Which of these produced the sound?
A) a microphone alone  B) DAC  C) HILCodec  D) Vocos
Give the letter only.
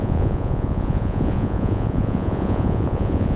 D